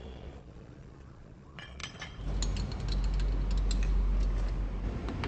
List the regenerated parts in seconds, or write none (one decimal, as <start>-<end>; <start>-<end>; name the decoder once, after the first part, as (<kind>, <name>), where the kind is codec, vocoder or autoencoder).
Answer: 0.0-1.8 (vocoder, Vocos)